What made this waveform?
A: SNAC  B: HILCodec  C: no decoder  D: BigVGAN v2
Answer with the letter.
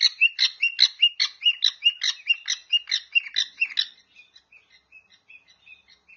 C